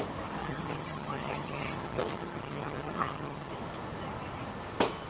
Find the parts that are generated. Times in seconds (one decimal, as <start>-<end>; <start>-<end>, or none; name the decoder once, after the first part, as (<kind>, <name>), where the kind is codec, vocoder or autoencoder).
0.4-3.5 (vocoder, HiFi-GAN)